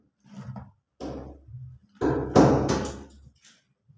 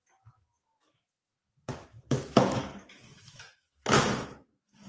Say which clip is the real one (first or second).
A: first